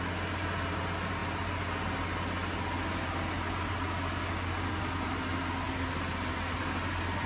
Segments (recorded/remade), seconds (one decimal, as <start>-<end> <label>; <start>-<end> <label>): 0.0-7.3 recorded